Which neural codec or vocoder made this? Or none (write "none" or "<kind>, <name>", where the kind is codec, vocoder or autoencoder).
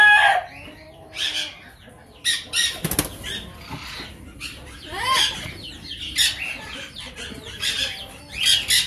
none